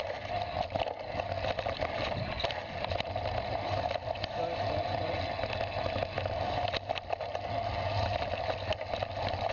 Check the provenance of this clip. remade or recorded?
recorded